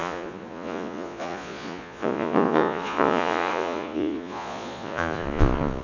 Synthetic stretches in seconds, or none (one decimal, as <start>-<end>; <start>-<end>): 0.0-5.8

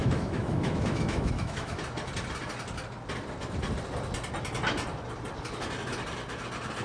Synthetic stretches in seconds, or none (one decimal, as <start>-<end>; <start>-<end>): 0.0-1.8

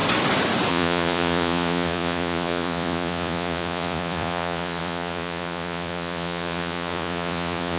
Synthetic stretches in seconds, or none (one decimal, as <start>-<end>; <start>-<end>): 0.7-7.8

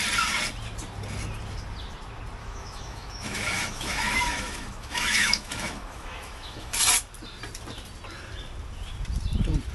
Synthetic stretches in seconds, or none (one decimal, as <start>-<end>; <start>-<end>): 2.4-6.8